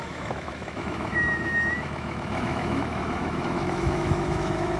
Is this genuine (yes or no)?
no